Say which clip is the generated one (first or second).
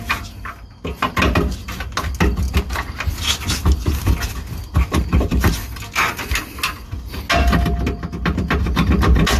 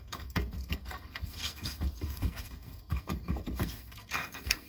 second